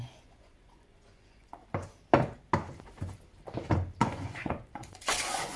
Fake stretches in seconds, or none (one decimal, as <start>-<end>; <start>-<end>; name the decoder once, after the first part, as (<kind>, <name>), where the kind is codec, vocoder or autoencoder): 0.0-1.6 (vocoder, Vocos); 4.0-5.6